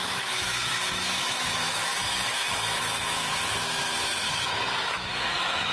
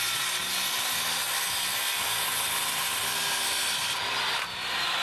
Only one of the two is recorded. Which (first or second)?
second